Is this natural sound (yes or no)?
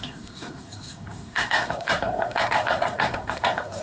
no